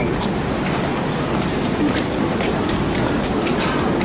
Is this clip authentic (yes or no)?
yes